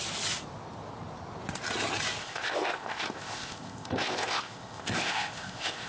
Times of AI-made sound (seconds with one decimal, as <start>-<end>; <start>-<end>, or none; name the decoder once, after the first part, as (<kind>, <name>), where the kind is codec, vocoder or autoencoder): 2.2-5.9 (codec, ZipCodec)